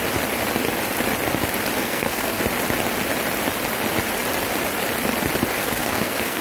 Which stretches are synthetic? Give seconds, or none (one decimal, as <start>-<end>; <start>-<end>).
1.8-2.4; 5.6-6.4